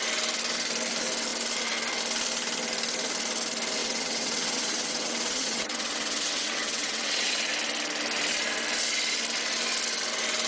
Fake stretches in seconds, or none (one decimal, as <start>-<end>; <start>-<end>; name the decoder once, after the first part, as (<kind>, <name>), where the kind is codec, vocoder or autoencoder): 3.8-7.5 (vocoder, WaveNeXt)

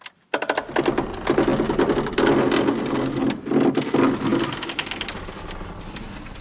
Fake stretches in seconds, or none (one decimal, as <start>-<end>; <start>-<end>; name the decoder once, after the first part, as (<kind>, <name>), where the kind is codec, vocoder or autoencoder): none

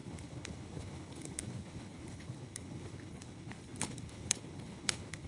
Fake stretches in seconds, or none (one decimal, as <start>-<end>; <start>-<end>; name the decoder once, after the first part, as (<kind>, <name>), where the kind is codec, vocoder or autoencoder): 0.0-5.3 (codec, HILCodec)